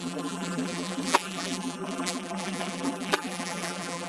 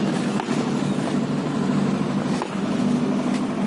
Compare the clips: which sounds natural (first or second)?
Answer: second